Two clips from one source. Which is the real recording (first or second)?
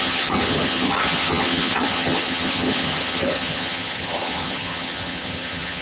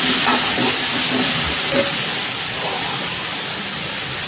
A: second